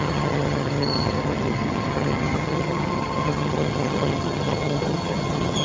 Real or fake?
fake